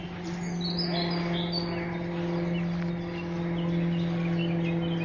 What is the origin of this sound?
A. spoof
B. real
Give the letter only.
B